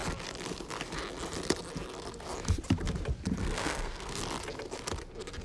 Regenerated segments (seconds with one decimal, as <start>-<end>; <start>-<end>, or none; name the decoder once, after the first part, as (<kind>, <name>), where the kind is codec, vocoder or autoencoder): 3.4-4.2 (codec, SNAC)